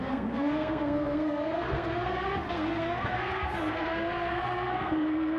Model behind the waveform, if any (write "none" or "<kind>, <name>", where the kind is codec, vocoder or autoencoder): codec, SNAC